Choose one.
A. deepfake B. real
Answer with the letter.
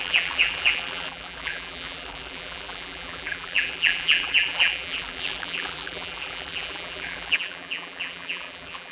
A